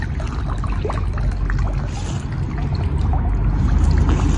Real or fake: real